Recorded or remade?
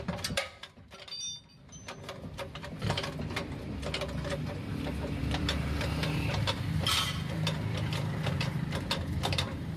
remade